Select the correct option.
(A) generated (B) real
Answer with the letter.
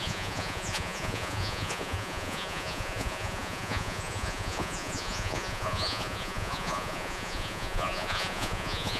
A